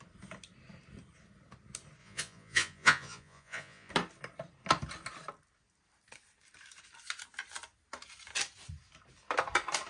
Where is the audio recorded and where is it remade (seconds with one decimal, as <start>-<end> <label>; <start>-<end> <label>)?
0.0-2.0 recorded; 2.0-3.9 remade; 3.9-9.9 recorded